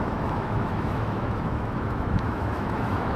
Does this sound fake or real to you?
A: fake